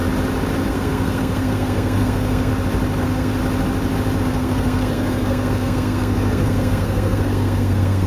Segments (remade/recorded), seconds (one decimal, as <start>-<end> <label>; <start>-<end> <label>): 0.0-0.7 recorded; 0.7-2.5 remade; 2.5-3.0 recorded; 3.0-3.4 remade; 3.4-4.2 recorded; 4.2-8.1 remade